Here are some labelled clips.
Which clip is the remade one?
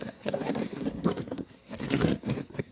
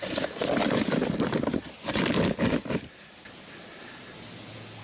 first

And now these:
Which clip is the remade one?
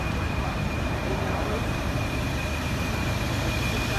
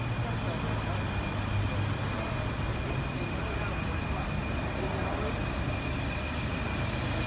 first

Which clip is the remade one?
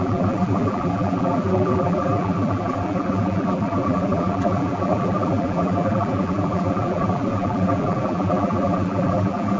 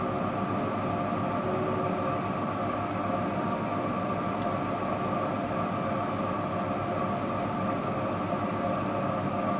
first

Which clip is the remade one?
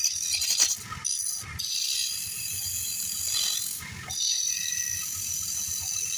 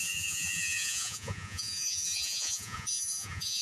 second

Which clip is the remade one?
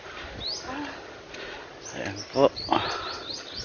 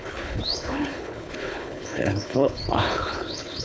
second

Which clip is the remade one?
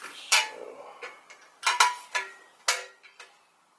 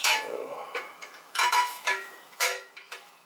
second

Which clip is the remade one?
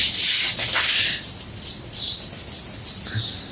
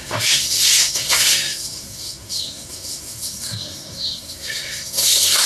second